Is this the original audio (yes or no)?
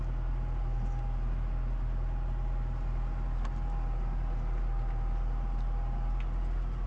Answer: yes